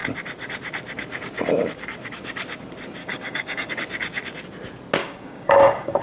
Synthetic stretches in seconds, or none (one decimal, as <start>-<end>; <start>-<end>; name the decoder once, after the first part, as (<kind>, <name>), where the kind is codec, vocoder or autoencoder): 3.0-3.7 (codec, DAC); 5.0-6.0